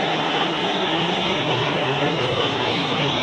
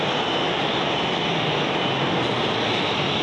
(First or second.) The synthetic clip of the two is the first